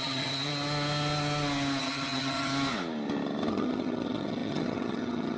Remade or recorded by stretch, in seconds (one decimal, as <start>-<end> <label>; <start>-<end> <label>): 0.0-0.5 remade; 0.5-1.8 recorded; 1.8-2.5 remade; 2.5-3.5 recorded; 3.5-5.4 remade